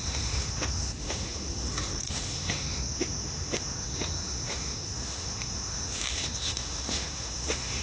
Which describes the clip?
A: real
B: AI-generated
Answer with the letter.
B